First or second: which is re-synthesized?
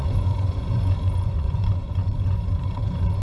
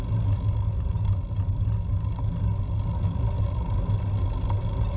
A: first